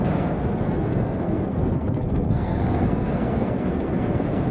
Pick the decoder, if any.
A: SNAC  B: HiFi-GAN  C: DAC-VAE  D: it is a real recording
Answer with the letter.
A